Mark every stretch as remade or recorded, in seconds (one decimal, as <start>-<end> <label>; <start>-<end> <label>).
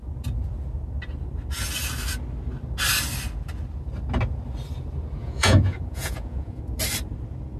0.0-5.2 recorded; 5.2-6.6 remade; 6.6-7.6 recorded